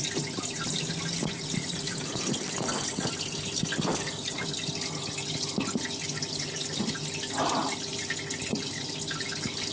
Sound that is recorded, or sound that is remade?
recorded